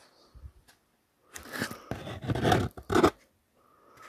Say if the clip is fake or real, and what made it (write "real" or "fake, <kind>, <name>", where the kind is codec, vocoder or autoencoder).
real